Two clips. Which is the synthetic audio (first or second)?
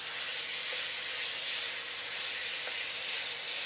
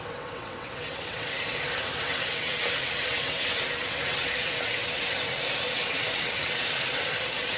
second